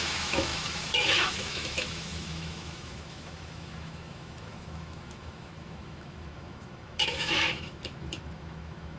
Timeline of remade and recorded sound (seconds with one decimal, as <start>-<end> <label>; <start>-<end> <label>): 0.0-9.0 remade